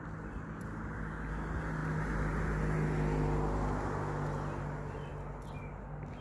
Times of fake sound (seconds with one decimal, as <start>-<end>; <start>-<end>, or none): none

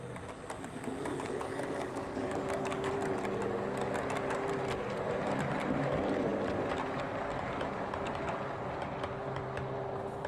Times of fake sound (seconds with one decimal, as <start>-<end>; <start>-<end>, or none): 1.1-2.9

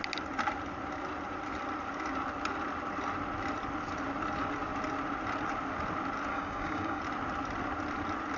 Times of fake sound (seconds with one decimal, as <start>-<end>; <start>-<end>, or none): 6.3-7.0